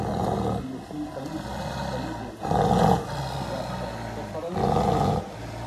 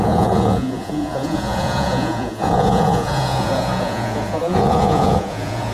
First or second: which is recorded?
first